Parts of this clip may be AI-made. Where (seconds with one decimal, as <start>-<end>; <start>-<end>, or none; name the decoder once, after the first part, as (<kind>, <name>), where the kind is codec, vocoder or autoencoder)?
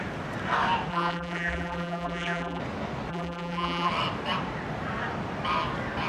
0.9-2.6 (vocoder, BigVGAN v2); 3.1-3.9